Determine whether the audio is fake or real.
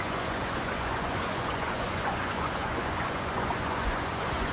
fake